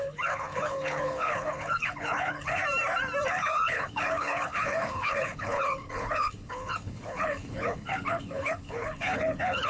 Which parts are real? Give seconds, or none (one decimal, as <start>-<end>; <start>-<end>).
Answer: 2.6-3.3